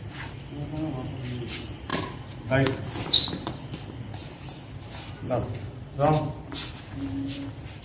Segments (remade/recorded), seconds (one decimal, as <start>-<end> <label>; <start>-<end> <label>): 0.0-1.9 recorded; 1.9-3.5 remade; 3.5-4.2 recorded; 4.2-5.2 remade; 5.2-7.8 recorded